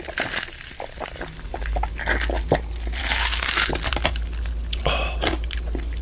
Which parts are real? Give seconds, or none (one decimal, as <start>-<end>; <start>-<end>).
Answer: 0.0-3.0; 3.7-6.0